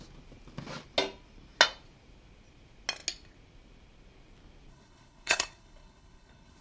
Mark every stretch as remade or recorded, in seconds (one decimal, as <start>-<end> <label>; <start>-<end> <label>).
0.0-4.7 recorded; 4.7-6.6 remade